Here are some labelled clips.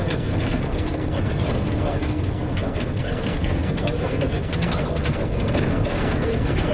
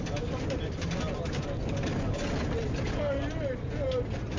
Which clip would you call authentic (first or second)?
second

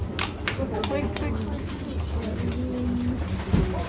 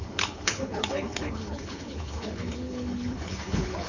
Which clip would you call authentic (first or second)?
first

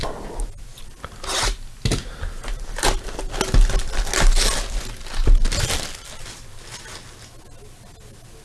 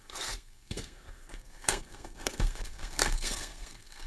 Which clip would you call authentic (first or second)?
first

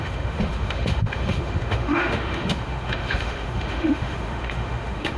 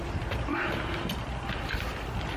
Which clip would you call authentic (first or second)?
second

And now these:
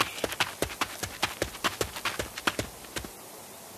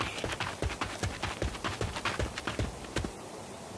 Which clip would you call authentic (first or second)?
first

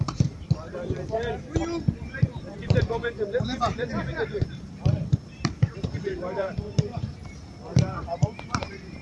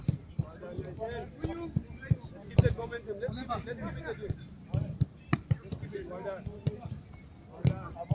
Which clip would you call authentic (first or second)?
second